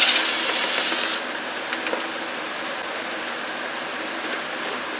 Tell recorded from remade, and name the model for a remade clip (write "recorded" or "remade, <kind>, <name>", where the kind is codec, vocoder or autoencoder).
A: recorded